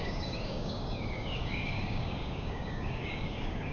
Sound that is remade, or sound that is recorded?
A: remade